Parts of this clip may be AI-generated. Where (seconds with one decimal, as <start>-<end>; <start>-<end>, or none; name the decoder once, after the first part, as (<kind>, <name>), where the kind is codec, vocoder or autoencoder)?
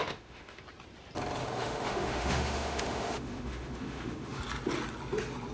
0.0-0.6 (autoencoder, DAC-VAE); 1.4-4.4